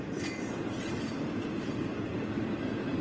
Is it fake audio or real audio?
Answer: real